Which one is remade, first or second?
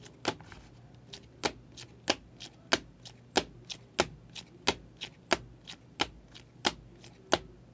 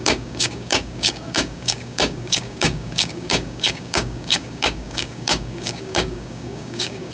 second